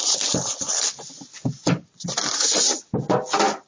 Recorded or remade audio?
recorded